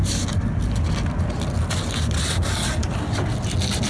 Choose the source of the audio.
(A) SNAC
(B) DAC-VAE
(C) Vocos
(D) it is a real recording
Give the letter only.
D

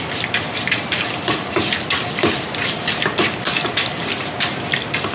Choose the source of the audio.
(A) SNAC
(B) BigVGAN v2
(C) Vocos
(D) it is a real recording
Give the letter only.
D